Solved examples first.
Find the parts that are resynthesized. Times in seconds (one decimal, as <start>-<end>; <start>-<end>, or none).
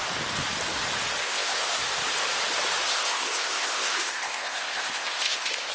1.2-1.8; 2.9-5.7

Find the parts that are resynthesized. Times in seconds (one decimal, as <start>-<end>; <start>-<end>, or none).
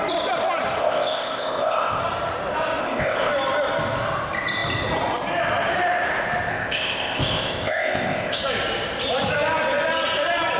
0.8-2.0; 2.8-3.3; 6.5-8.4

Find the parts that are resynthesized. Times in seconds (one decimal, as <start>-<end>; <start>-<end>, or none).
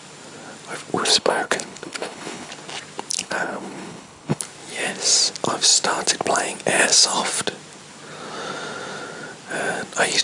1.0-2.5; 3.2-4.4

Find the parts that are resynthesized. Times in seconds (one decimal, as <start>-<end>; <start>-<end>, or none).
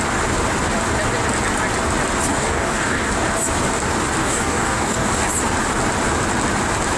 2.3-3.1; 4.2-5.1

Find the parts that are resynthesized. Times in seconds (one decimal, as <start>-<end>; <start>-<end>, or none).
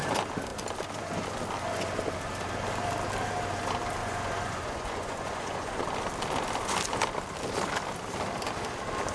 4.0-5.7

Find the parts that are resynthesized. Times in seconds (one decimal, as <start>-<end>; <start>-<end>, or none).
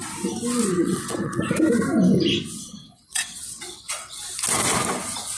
0.7-1.4; 2.8-4.2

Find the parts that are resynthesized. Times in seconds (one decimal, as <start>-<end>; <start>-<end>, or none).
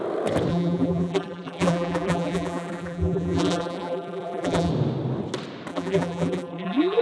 0.5-4.7; 5.7-7.0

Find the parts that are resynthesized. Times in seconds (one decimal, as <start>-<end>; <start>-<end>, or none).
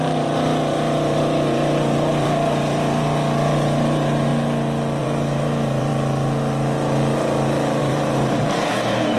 0.0-4.3; 5.0-5.9; 7.8-9.2